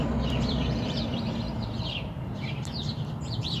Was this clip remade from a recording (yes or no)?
yes